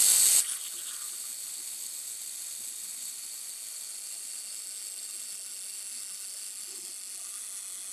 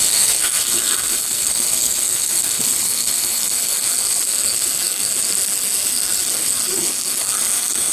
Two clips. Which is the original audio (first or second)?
first